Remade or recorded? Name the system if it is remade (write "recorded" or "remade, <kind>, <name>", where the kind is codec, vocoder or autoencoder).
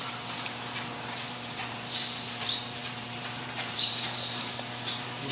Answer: remade, vocoder, BigVGAN v2